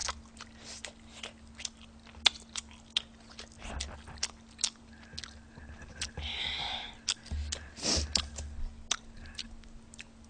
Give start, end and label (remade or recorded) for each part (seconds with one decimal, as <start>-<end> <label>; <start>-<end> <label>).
0.0-6.3 recorded; 6.3-6.9 remade; 6.9-10.3 recorded